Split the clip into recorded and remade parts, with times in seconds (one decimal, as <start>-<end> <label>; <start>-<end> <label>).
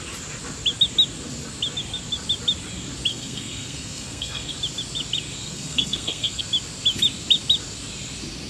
0.0-3.1 recorded; 3.1-4.5 remade; 4.5-5.4 recorded; 5.4-6.4 remade; 6.4-8.5 recorded